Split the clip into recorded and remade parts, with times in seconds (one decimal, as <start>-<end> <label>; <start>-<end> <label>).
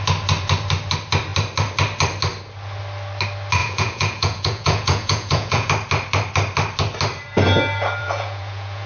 0.0-3.6 recorded; 3.6-5.7 remade; 5.7-8.0 recorded; 8.0-8.9 remade